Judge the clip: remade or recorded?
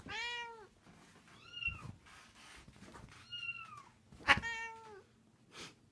recorded